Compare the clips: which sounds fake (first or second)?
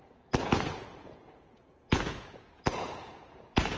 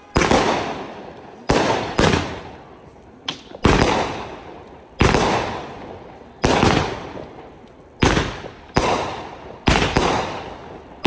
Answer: first